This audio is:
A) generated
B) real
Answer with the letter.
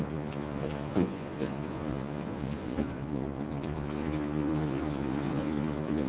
A